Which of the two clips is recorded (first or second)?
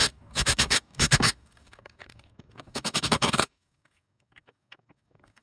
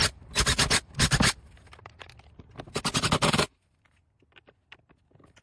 second